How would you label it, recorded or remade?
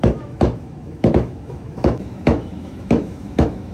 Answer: remade